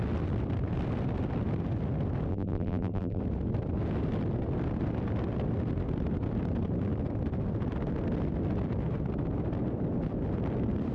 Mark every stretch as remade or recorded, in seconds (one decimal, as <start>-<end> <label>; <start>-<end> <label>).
0.0-2.3 recorded; 2.3-3.2 remade; 3.2-10.9 recorded